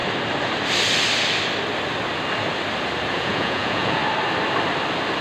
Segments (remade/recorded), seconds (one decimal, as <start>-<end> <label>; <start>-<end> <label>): 0.0-3.1 recorded; 3.1-4.0 remade; 4.0-5.2 recorded